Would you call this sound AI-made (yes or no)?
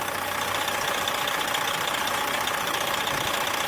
no